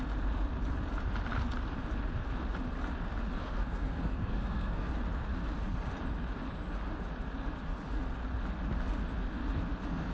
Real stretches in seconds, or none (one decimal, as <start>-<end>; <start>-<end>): 0.0-3.4; 4.9-10.1